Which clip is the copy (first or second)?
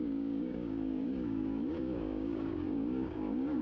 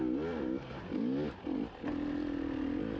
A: first